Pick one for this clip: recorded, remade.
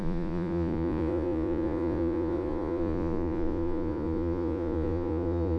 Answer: remade